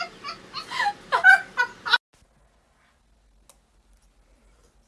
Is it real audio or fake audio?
real